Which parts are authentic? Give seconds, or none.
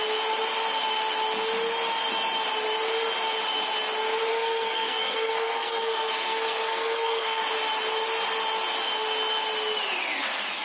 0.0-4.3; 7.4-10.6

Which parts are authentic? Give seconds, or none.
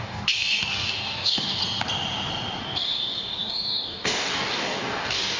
1.6-2.6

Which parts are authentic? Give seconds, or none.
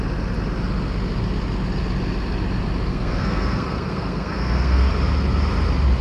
0.0-2.9; 4.9-6.0